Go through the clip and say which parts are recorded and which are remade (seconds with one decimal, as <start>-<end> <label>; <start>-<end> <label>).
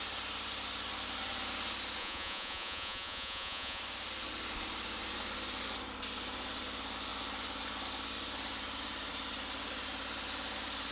0.0-2.0 recorded; 2.0-3.8 remade; 3.8-10.9 recorded